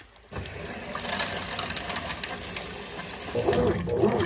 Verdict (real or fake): real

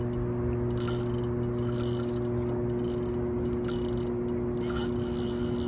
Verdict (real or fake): real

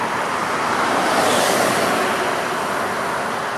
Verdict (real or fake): real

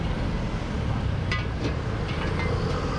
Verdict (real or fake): real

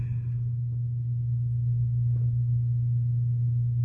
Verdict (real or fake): real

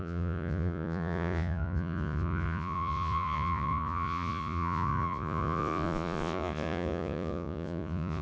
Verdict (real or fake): fake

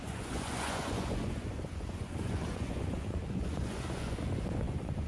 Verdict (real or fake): fake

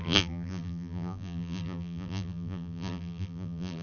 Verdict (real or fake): fake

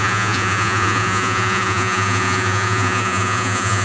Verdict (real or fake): fake